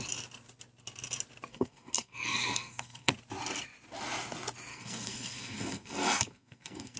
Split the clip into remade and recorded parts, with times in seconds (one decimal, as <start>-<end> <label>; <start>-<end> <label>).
0.0-1.5 recorded; 1.5-3.1 remade; 3.1-4.7 recorded; 4.7-7.0 remade